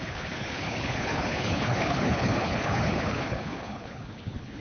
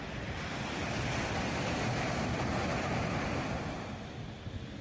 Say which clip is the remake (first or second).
first